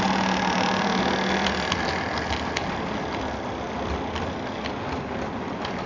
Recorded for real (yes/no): yes